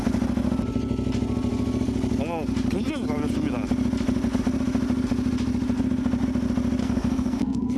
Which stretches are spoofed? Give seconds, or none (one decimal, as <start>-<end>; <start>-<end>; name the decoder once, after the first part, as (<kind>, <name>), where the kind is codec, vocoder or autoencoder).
6.8-7.8 (codec, SNAC)

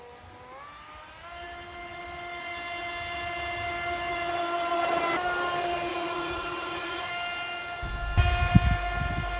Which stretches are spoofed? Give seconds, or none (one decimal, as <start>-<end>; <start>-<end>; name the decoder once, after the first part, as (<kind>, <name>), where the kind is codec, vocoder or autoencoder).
5.9-7.1 (vocoder, Vocos)

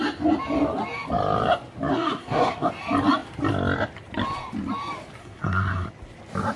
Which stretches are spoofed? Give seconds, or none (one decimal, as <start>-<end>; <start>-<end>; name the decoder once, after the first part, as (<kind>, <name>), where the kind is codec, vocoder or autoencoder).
1.9-2.7 (codec, SNAC); 5.2-5.9

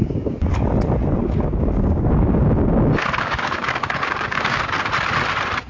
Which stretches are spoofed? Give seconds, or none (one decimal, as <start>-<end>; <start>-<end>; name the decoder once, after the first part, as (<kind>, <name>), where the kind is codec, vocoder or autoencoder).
0.0-0.5 (codec, DAC); 1.2-4.6

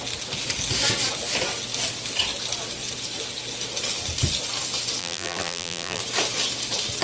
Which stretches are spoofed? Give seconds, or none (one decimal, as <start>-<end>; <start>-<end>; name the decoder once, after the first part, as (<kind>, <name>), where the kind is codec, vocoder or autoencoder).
5.0-6.0 (vocoder, BigVGAN v2)

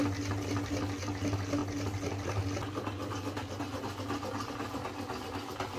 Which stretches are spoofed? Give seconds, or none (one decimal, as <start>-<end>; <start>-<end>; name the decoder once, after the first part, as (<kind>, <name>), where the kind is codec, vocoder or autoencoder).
none

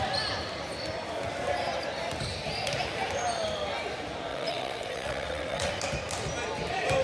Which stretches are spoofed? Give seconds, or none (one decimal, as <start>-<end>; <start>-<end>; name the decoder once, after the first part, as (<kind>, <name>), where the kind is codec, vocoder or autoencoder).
4.3-5.7 (vocoder, WaveNeXt)

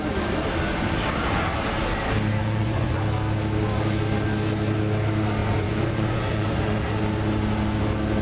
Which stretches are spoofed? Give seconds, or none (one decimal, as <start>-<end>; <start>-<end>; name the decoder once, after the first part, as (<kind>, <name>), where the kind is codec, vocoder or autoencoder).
2.4-3.0 (vocoder, Vocos); 5.4-7.0